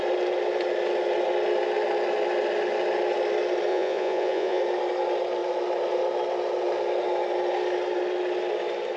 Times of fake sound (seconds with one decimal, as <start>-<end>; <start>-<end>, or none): 3.7-4.6

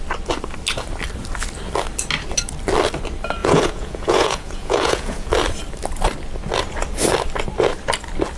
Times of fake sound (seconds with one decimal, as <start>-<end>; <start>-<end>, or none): 3.4-5.3

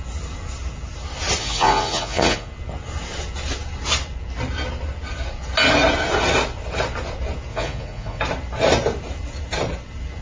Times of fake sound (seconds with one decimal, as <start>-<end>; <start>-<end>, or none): 1.4-2.5; 7.5-8.2

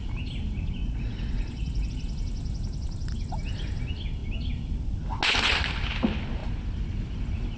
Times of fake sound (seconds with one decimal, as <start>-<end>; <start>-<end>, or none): 0.8-1.9

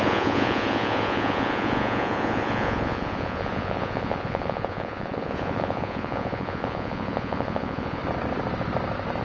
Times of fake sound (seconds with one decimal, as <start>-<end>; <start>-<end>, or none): 0.0-8.0

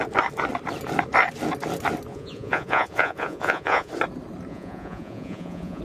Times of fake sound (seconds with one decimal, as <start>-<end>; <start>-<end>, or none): 2.1-3.9; 4.5-5.8